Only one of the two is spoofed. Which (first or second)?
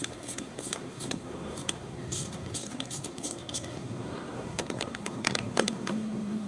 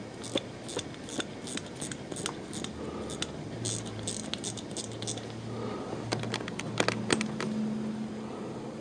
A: first